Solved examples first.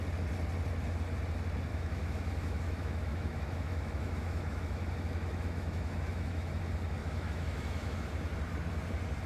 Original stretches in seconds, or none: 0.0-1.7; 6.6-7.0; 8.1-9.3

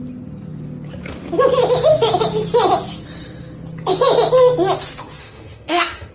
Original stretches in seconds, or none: 0.0-5.2

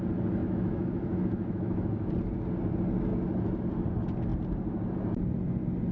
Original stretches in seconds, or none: 0.0-0.4; 2.1-5.9

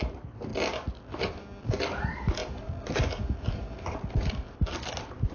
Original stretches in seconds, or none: 0.0-5.3

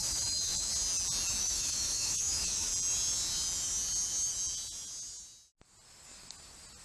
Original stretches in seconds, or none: 0.7-1.4; 2.7-6.8